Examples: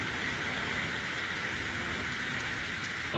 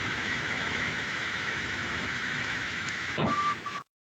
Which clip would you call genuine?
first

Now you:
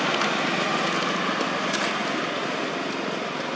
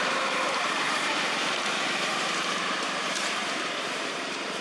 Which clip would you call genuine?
first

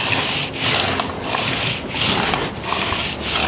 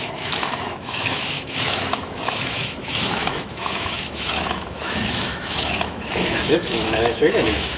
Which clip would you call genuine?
first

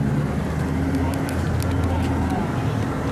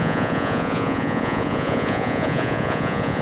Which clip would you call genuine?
first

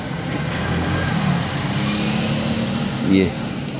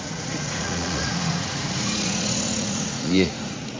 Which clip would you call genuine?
first